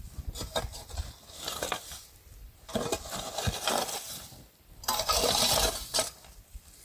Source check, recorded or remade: remade